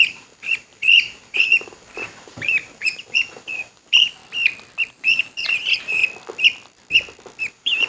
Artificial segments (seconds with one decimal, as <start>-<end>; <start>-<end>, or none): 0.0-4.2; 4.9-6.0; 7.5-7.9

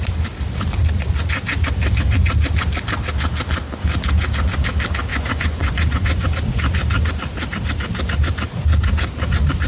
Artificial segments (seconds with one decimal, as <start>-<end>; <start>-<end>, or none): 5.1-6.3

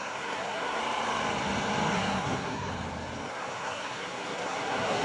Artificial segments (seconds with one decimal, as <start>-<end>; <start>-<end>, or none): 0.0-0.8; 1.9-2.7; 3.3-5.0

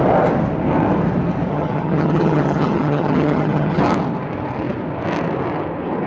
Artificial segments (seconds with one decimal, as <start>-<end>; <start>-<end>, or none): 1.5-3.8

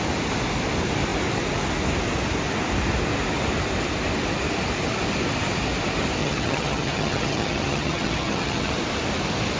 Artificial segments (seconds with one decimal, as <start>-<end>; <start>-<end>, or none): 6.2-8.7

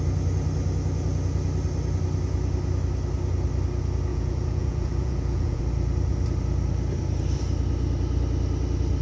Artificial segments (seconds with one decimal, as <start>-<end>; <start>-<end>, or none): 4.1-5.6